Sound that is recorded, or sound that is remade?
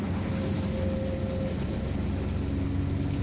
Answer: recorded